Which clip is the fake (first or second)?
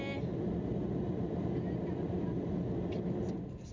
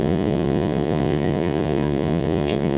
second